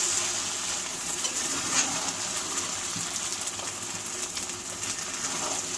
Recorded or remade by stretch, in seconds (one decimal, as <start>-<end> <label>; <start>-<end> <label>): 0.0-0.9 recorded; 0.9-2.0 remade; 2.0-5.8 recorded